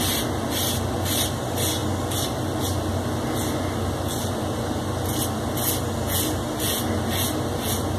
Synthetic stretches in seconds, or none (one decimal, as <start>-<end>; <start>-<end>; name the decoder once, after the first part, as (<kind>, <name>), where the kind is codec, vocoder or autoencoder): none

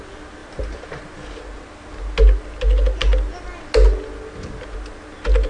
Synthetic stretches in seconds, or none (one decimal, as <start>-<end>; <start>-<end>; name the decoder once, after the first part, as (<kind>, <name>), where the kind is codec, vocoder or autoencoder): none

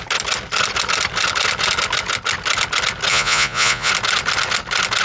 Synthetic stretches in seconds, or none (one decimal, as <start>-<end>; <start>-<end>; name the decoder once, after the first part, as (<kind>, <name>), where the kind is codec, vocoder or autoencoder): 3.1-3.9 (vocoder, Vocos)

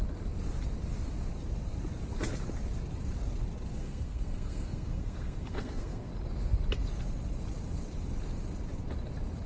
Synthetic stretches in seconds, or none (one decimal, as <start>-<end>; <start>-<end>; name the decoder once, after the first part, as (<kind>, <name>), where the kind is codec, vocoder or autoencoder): 3.7-6.1 (codec, SNAC)

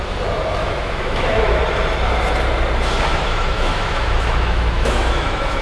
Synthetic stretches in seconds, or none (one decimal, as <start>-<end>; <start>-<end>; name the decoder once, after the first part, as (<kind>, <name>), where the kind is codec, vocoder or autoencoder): 0.6-1.6 (autoencoder, DAC-VAE); 3.1-5.6

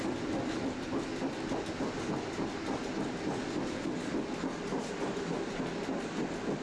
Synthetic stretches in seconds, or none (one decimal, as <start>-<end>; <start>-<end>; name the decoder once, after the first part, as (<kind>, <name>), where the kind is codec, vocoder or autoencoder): none

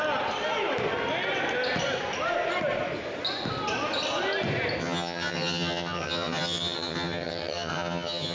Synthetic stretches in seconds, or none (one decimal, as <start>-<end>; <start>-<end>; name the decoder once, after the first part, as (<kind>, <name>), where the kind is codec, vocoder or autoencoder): 4.8-8.3 (vocoder, HiFi-GAN)

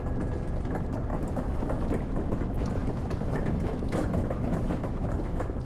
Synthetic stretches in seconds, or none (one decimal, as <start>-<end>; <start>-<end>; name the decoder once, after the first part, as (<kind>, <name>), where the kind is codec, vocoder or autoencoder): 1.1-1.9 (autoencoder, DAC-VAE); 2.8-5.6